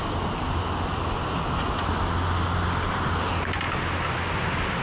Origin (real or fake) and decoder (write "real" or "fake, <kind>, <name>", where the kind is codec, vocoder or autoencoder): real